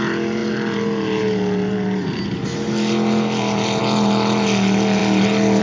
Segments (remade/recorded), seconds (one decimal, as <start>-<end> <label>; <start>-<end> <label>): 0.0-5.6 recorded